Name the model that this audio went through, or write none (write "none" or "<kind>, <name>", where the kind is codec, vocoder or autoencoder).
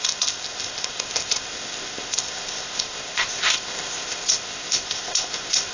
codec, ZipCodec